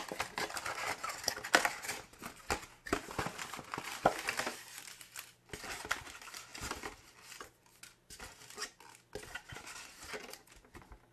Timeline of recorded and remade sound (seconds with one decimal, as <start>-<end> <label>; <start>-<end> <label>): 0.0-11.1 recorded